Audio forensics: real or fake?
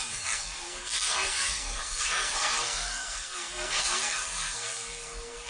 fake